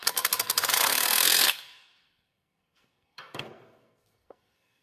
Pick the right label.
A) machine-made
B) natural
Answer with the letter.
A